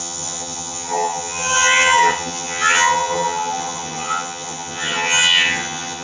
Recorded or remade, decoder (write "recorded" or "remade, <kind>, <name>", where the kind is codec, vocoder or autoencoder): remade, vocoder, HiFi-GAN